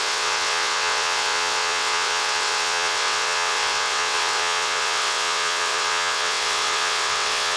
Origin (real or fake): fake